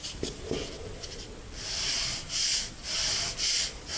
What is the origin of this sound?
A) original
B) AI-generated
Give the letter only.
A